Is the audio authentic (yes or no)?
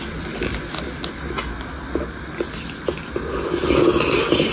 yes